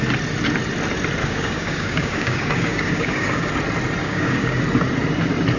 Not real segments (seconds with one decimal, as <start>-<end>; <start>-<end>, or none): 1.2-3.5; 4.0-4.6